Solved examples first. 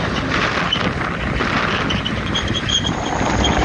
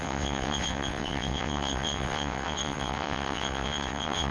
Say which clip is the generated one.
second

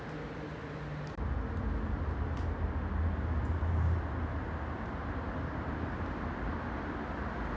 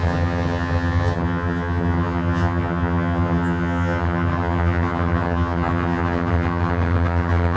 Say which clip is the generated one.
second